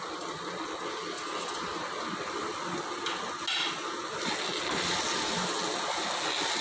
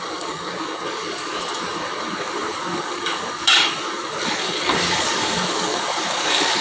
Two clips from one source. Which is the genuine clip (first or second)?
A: first